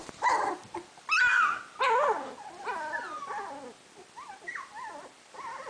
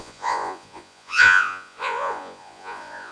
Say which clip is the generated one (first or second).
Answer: second